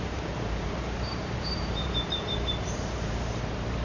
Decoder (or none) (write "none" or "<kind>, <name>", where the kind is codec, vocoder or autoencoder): vocoder, BigVGAN v2